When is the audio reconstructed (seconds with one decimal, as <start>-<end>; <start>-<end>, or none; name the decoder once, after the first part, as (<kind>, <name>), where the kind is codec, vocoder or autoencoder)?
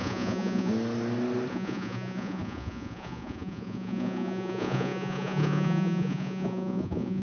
0.0-0.7 (vocoder, Vocos); 1.5-7.2